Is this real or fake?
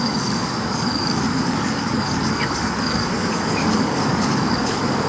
fake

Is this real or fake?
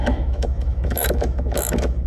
fake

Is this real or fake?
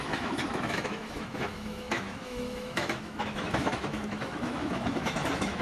fake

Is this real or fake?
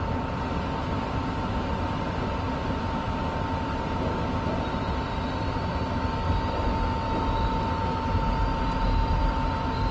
real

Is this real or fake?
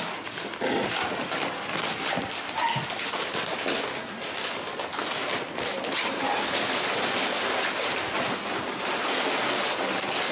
real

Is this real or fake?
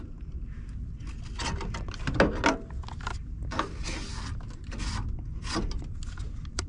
real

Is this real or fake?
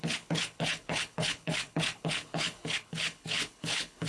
fake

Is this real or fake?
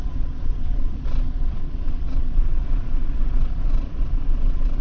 fake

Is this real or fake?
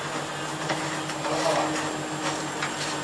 real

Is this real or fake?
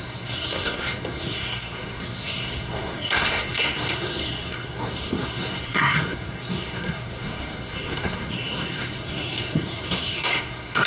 fake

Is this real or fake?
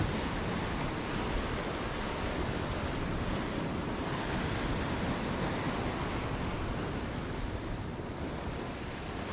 real